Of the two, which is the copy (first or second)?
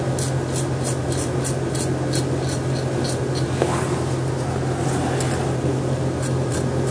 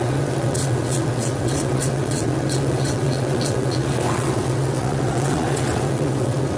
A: second